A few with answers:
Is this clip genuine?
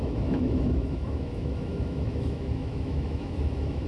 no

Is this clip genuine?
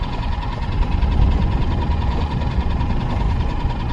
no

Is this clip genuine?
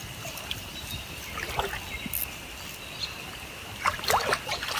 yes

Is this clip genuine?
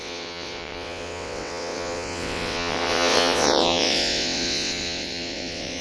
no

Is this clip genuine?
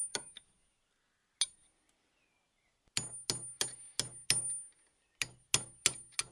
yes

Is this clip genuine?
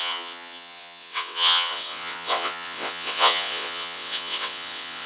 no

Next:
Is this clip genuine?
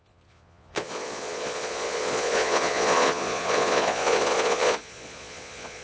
no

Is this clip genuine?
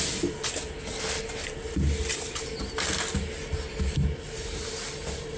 yes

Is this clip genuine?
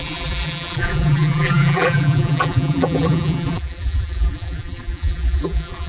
no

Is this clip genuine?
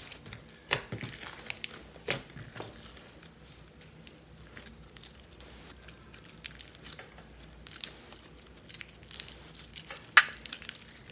yes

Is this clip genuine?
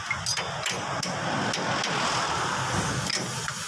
yes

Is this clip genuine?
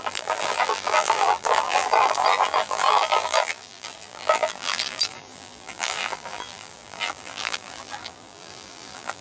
no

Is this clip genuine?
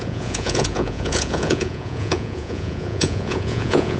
no